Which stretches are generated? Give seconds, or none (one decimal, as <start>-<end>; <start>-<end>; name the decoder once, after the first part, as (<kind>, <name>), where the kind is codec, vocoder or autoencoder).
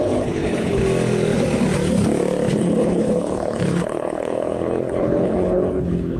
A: 0.0-0.8 (codec, HILCodec); 2.5-6.2